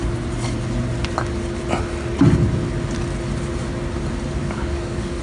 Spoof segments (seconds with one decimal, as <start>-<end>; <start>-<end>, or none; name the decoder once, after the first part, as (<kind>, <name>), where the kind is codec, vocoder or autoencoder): 4.4-5.2 (codec, DAC)